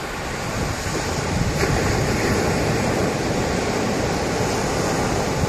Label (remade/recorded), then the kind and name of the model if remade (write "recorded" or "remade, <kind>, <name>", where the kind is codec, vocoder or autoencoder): recorded